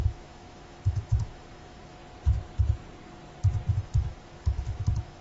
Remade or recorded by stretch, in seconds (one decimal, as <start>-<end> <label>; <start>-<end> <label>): 0.0-2.0 remade; 2.0-3.7 recorded; 3.7-5.2 remade